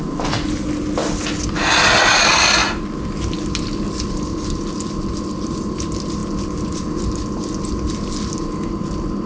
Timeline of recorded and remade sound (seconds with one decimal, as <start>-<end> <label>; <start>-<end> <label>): 0.0-9.3 recorded